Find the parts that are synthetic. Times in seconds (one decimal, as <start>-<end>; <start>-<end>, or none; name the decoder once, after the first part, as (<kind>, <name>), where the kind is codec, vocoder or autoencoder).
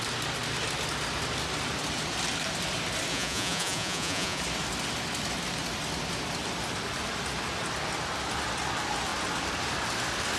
3.1-4.4 (vocoder, Vocos)